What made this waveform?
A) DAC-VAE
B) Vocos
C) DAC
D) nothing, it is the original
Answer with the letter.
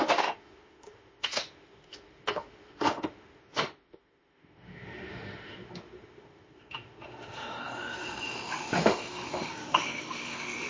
A